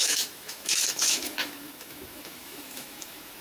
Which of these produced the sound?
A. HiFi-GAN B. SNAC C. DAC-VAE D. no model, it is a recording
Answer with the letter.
C